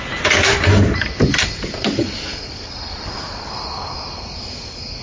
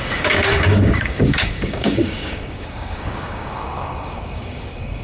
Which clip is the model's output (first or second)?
second